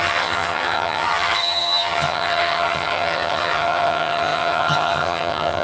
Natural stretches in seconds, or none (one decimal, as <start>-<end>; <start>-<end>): none